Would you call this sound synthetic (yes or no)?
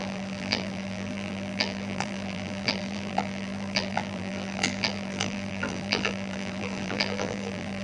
yes